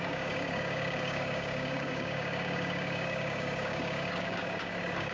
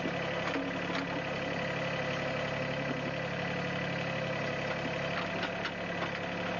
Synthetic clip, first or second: first